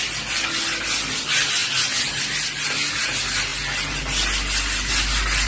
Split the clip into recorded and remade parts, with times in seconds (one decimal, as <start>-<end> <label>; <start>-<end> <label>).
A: 0.0-5.5 recorded